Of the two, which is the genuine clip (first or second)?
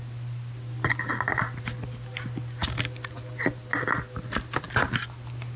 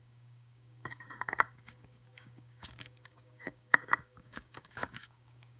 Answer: first